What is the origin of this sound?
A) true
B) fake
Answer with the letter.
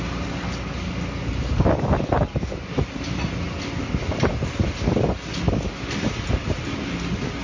A